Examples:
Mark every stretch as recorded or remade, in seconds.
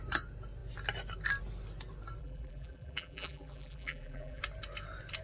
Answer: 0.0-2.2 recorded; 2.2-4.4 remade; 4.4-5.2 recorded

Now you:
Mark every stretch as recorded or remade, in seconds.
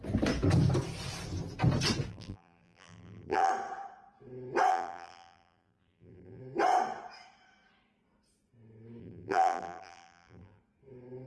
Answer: 0.0-2.1 recorded; 2.1-3.5 remade; 3.5-4.7 recorded; 4.7-6.4 remade; 6.4-9.0 recorded; 9.0-10.6 remade; 10.6-11.3 recorded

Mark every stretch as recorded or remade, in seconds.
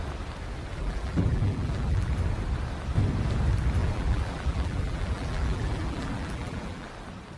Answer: 0.0-0.8 recorded; 0.8-2.1 remade; 2.1-3.8 recorded; 3.8-6.9 remade; 6.9-7.4 recorded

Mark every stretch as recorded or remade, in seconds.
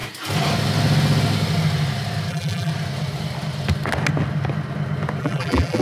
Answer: 0.0-2.3 recorded; 2.3-2.7 remade; 2.7-5.2 recorded; 5.2-5.8 remade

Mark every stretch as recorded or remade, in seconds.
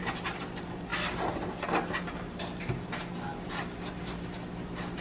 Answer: 0.0-5.0 recorded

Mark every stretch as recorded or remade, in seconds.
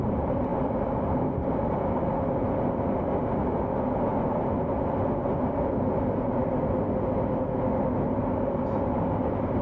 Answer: 0.0-9.6 recorded